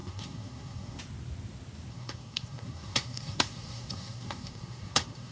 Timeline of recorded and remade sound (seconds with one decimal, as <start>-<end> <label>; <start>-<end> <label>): 0.0-1.0 remade; 1.0-1.9 recorded; 1.9-5.3 remade